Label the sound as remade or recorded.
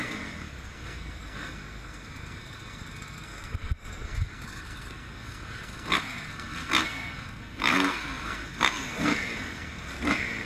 remade